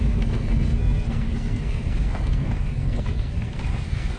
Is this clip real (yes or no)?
no